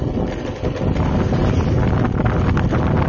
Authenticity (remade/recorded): recorded